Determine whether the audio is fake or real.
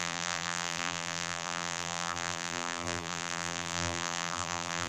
fake